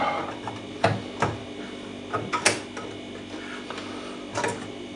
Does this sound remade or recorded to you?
recorded